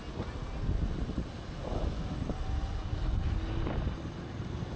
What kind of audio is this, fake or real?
real